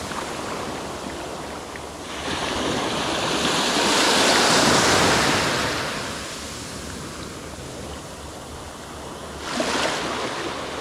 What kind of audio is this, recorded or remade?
recorded